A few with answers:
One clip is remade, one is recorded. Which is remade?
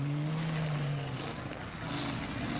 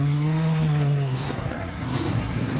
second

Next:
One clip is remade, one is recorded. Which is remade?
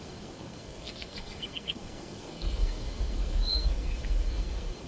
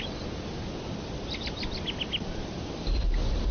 first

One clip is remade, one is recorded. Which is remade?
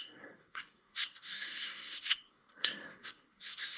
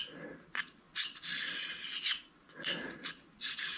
first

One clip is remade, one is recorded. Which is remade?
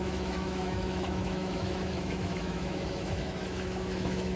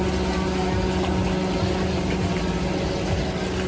first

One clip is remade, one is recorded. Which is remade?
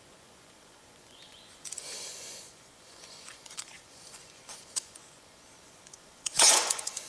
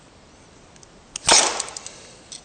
first